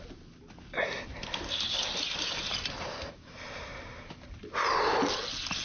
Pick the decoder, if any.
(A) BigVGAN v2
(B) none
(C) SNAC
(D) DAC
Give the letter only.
B